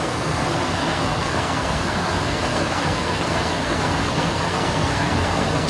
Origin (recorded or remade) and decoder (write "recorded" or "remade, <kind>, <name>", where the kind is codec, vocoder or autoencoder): remade, codec, SNAC